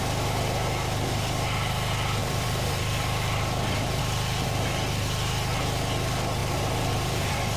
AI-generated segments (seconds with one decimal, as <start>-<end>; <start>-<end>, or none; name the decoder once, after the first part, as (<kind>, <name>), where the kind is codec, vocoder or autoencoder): 2.2-4.0 (vocoder, BigVGAN v2); 6.4-7.6